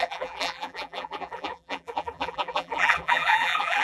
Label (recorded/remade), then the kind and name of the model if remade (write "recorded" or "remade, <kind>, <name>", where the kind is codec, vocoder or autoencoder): remade, vocoder, BigVGAN v2